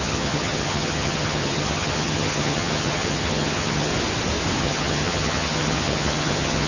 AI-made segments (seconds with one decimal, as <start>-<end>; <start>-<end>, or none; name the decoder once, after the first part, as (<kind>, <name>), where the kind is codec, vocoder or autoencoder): 0.0-3.9 (vocoder, HiFi-GAN); 4.6-6.7